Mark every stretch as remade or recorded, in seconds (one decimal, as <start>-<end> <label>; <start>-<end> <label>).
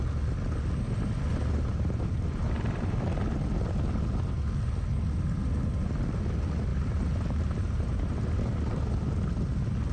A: 0.0-1.3 recorded; 1.3-3.2 remade; 3.2-6.7 recorded; 6.7-8.9 remade; 8.9-9.9 recorded